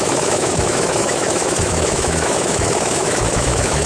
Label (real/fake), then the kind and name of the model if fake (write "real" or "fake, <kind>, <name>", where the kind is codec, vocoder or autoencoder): fake, autoencoder, DAC-VAE